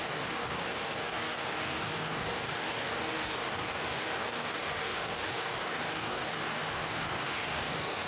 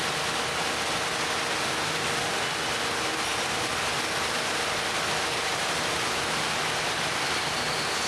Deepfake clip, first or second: first